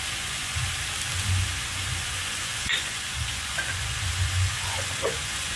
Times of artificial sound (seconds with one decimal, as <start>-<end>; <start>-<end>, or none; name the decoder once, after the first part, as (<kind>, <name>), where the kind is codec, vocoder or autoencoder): 0.0-0.6 (vocoder, Vocos); 1.2-5.6